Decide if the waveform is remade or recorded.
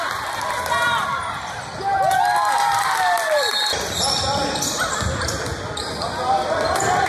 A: remade